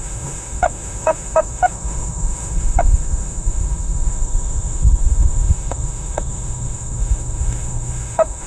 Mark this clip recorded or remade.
remade